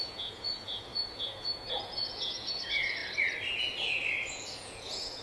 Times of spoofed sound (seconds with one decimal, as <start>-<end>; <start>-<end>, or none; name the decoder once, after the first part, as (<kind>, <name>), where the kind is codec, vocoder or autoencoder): 0.0-3.0 (vocoder, Vocos); 4.3-5.2